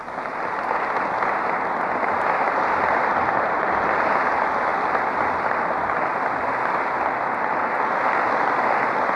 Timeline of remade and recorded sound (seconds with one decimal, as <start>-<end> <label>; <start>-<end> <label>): 0.0-9.2 recorded